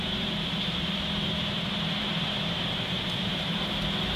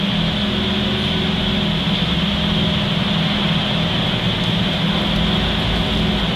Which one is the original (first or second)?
second